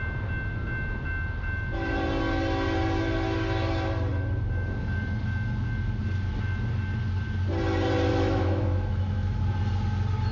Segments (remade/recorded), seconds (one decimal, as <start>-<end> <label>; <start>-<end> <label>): 0.0-8.1 recorded; 8.1-9.4 remade; 9.4-10.3 recorded